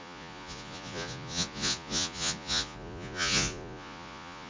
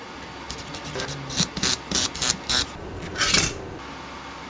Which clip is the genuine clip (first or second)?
second